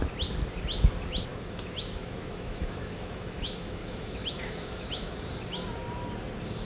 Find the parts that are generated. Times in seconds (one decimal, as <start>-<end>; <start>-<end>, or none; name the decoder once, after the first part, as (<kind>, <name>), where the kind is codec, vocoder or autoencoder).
1.3-5.3 (autoencoder, DAC-VAE)